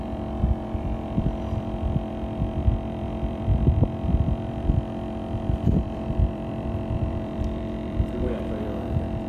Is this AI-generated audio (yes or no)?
yes